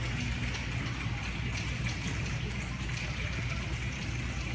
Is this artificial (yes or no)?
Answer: no